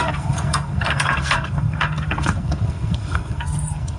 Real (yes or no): no